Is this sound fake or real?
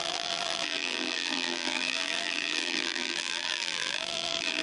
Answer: fake